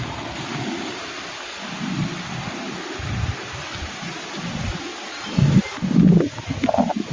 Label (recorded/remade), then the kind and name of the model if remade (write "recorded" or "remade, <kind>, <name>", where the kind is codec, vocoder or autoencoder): recorded